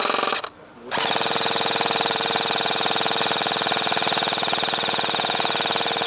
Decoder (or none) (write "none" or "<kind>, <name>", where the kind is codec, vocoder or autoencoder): vocoder, BigVGAN v2